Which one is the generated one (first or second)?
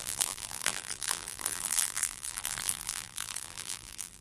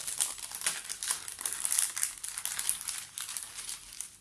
first